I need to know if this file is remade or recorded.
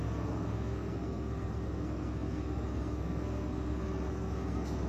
remade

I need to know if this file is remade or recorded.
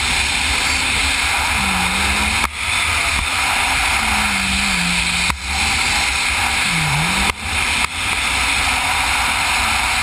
recorded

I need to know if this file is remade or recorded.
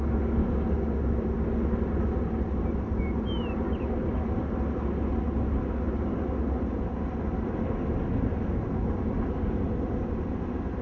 recorded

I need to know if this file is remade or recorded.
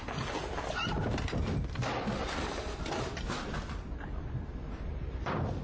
recorded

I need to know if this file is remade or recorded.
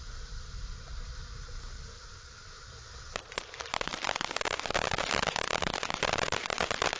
remade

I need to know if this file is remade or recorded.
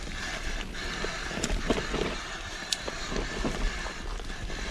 recorded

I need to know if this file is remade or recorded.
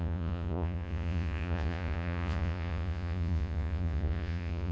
remade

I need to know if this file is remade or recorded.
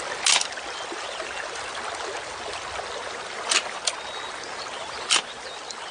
recorded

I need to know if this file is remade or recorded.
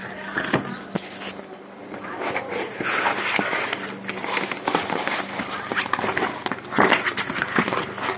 recorded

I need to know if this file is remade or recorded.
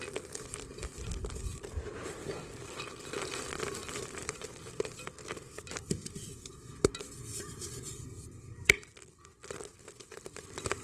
recorded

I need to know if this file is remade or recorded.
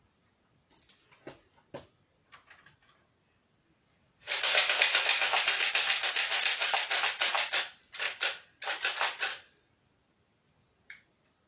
recorded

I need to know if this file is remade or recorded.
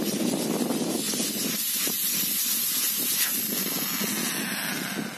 recorded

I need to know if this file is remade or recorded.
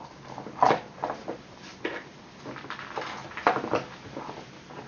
recorded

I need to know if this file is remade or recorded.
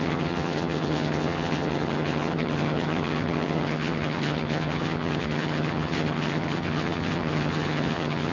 remade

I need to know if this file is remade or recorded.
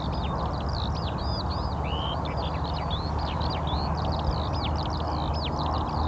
recorded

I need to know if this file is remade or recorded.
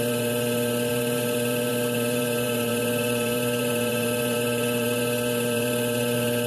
remade